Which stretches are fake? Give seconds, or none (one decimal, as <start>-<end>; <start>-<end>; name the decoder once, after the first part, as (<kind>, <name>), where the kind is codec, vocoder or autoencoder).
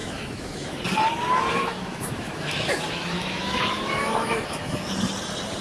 0.0-0.8 (autoencoder, DAC-VAE); 1.5-4.9